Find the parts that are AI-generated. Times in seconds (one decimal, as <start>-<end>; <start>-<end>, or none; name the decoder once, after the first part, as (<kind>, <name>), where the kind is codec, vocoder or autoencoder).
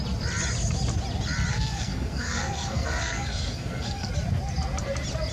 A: 1.5-4.1 (codec, SNAC)